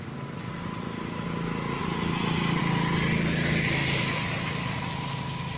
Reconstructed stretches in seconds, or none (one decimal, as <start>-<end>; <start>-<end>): 1.8-2.6; 3.8-4.8